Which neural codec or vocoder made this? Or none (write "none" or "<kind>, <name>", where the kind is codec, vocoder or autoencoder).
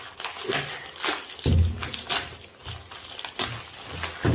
none